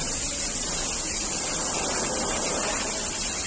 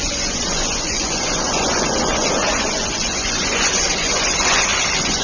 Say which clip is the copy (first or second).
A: second